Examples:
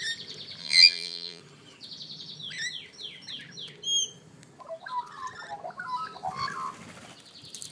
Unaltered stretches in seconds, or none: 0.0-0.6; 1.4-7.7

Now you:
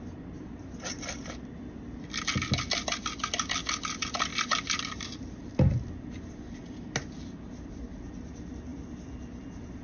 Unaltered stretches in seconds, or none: 0.0-4.3; 5.5-8.7; 9.4-9.8

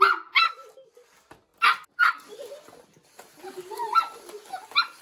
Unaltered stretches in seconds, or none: 0.0-5.0

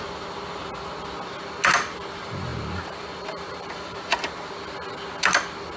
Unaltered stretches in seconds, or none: 0.0-2.5; 4.3-5.8

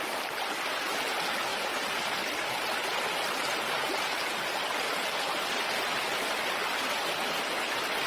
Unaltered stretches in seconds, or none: 0.0-1.5; 2.5-8.1

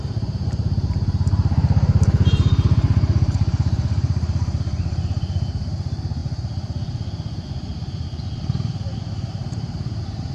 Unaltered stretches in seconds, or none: none

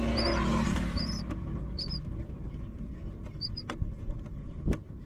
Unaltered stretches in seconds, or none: 0.0-0.5; 2.3-5.1

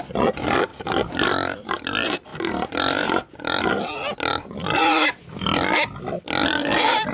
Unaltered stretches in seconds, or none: 0.0-0.7; 1.7-2.3; 3.7-4.3; 5.2-7.1